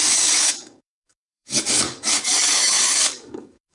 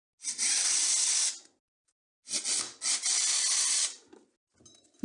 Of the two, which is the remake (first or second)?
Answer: first